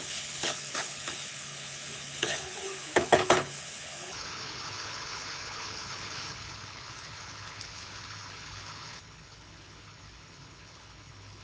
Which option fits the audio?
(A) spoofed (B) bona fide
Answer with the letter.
A